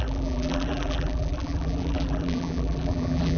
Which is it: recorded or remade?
remade